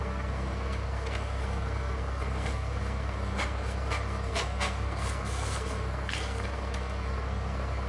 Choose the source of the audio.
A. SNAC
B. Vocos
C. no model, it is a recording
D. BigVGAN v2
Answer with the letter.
A